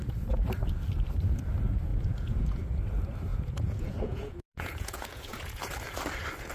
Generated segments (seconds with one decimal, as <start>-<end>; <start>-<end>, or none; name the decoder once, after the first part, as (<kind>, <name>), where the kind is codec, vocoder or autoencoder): 1.9-2.8 (vocoder, Vocos); 3.3-5.6